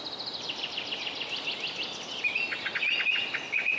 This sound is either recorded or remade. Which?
recorded